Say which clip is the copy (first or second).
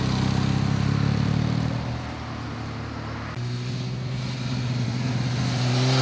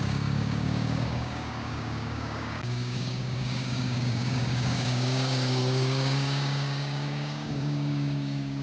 second